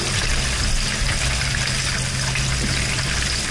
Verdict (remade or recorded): recorded